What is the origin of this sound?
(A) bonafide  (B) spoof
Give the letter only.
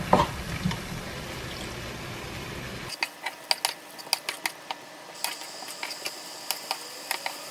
A